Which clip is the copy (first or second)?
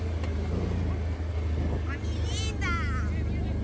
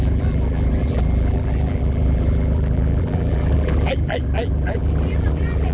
second